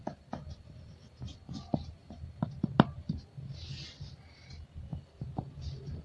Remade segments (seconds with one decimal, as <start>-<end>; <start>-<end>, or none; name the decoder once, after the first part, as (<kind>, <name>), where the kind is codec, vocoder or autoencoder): 4.9-6.0 (vocoder, BigVGAN v2)